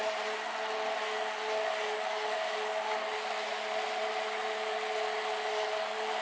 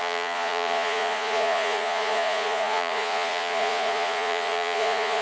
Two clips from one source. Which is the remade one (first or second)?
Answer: second